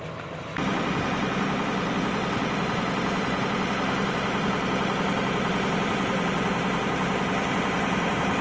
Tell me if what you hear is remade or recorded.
recorded